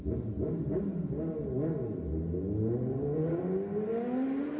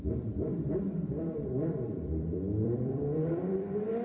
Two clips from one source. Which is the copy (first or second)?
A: second